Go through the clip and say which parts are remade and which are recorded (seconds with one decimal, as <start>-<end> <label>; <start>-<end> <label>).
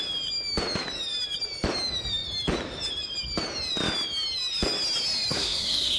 0.0-5.3 recorded; 5.3-6.0 remade